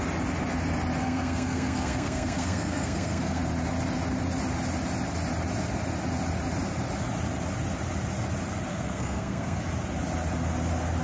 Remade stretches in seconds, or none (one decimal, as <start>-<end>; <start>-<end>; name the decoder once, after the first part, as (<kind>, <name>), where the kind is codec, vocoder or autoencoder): 1.0-3.4 (codec, SNAC); 8.7-9.6